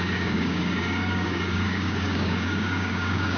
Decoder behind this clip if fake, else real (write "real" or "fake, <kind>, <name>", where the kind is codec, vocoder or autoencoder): fake, codec, DAC